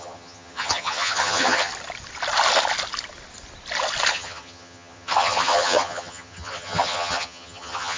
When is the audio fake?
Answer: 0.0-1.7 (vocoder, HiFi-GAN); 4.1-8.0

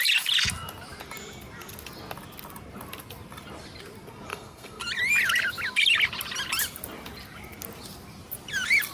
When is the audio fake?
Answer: 4.3-4.8 (codec, SNAC)

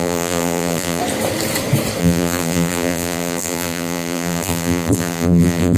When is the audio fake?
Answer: 0.0-1.0 (vocoder, BigVGAN v2); 2.0-5.8

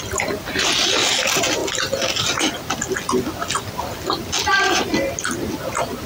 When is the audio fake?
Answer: none

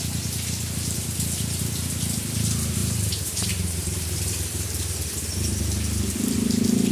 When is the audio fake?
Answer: 2.8-5.6 (vocoder, BigVGAN v2)

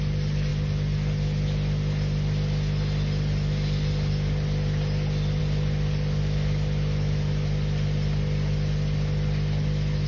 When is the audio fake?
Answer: none

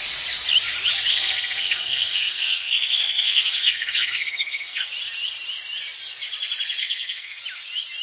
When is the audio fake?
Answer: 1.1-4.9 (codec, SNAC); 6.8-7.4

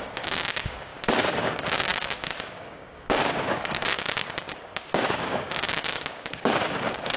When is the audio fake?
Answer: 0.0-0.9 (codec, DAC); 1.4-7.2